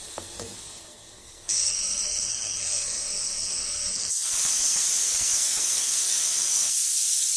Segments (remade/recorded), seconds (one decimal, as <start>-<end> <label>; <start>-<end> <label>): 0.0-7.4 remade